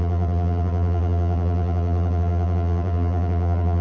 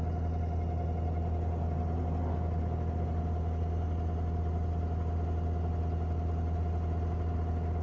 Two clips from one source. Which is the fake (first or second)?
first